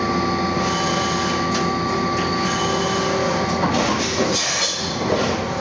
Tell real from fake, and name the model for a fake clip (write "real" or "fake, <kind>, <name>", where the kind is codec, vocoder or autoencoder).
real